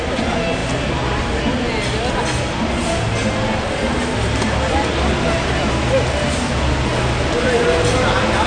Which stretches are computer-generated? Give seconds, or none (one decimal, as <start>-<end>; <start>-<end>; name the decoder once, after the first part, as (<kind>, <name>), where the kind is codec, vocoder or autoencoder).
none